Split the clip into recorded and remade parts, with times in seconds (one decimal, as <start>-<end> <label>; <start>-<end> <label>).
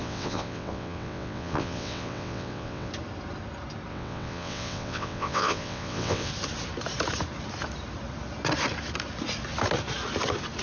0.0-2.9 remade; 2.9-3.9 recorded; 3.9-6.3 remade; 6.3-10.6 recorded